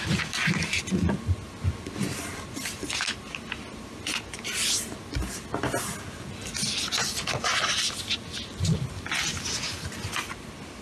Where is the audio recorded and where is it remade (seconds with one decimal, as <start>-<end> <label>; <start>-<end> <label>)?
0.0-10.8 recorded